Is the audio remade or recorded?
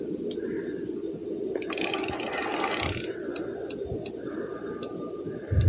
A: recorded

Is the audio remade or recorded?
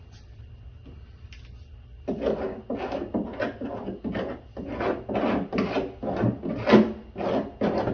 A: recorded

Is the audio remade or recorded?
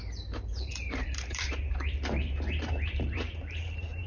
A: remade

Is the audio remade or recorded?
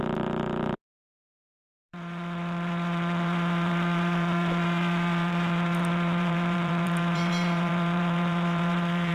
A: remade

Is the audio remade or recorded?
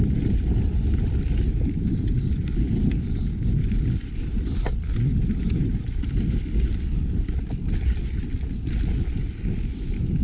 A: recorded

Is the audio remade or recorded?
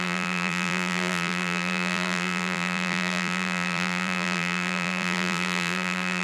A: remade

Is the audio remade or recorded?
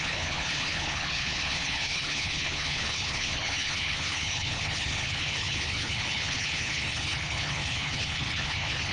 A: remade